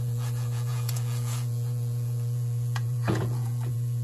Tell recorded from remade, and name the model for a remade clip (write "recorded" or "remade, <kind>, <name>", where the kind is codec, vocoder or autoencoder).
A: remade, vocoder, Vocos